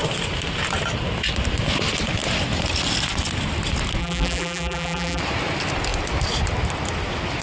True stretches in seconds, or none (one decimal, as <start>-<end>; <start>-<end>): 0.0-4.0; 5.2-7.4